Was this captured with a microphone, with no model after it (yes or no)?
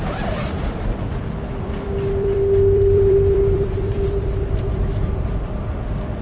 no